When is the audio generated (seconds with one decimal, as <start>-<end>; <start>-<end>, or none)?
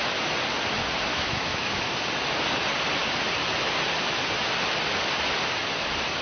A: 1.1-1.8